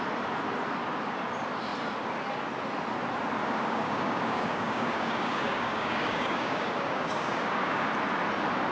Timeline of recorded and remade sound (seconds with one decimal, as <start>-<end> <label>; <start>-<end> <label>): 0.0-3.4 recorded; 3.4-7.9 remade; 7.9-8.7 recorded